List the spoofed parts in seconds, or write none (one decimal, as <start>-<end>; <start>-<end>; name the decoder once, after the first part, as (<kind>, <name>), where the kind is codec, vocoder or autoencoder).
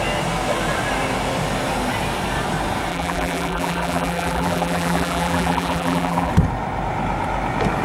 2.9-6.3 (vocoder, BigVGAN v2)